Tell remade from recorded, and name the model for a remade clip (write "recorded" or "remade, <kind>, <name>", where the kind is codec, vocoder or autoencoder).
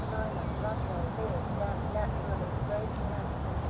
recorded